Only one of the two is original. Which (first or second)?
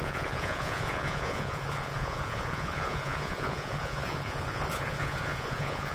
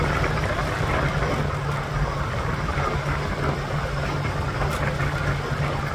second